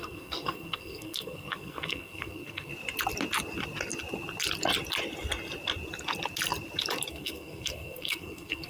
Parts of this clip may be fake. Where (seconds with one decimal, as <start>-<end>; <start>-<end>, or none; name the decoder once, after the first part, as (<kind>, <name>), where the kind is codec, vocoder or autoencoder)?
0.0-2.7 (codec, SNAC); 7.1-8.7